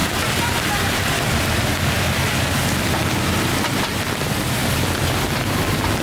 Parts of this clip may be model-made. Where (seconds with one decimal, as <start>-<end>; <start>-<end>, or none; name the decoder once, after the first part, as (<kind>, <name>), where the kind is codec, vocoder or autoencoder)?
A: 4.6-5.6 (vocoder, BigVGAN v2)